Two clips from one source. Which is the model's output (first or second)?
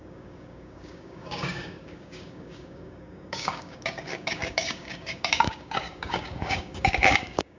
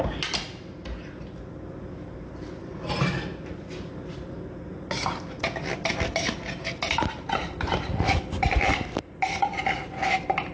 first